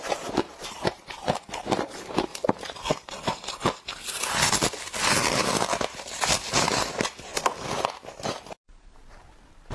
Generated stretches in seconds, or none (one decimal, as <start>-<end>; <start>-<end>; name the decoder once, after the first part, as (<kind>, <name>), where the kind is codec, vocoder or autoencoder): 0.0-2.3 (vocoder, BigVGAN v2); 2.9-3.3; 5.3-7.3; 7.8-9.7